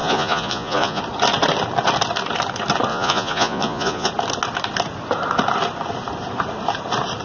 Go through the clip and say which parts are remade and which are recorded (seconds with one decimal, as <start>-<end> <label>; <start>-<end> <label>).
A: 0.0-1.0 remade; 1.0-2.9 recorded; 2.9-4.1 remade; 4.1-7.2 recorded